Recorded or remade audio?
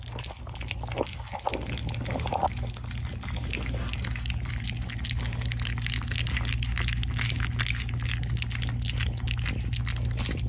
recorded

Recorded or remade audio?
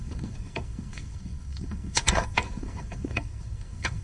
remade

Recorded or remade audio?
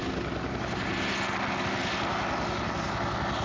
recorded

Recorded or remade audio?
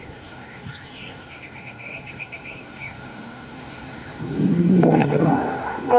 remade